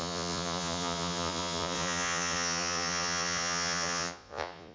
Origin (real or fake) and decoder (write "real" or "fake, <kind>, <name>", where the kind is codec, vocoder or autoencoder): fake, vocoder, Vocos